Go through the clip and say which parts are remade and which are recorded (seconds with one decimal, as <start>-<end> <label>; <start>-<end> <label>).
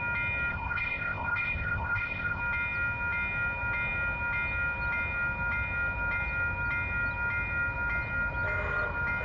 0.0-0.5 recorded; 0.5-2.4 remade; 2.4-9.2 recorded